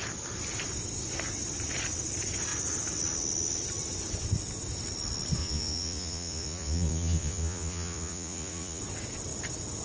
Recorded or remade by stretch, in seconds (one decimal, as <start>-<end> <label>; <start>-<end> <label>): 0.0-5.4 recorded; 5.4-8.8 remade; 8.8-9.8 recorded